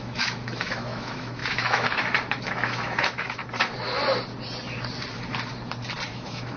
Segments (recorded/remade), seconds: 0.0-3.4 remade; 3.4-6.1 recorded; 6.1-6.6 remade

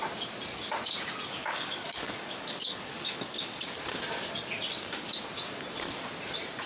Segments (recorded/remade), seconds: 0.0-1.4 recorded; 1.4-3.6 remade; 3.6-6.7 recorded

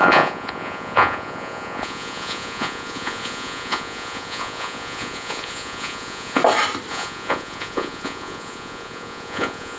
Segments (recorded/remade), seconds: 0.0-6.4 remade; 6.4-6.9 recorded; 6.9-9.8 remade

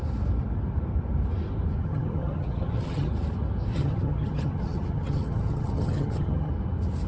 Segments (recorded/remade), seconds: 0.0-1.8 recorded; 1.8-3.1 remade; 3.1-3.7 recorded; 3.7-6.5 remade; 6.5-7.1 recorded